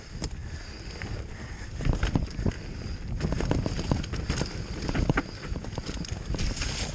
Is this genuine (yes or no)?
yes